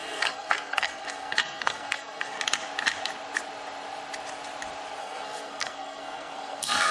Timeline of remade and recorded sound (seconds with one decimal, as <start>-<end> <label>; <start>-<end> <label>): 0.0-2.4 remade; 2.4-5.0 recorded; 5.0-6.9 remade